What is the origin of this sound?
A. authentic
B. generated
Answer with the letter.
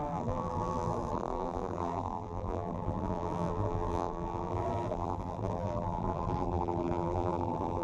B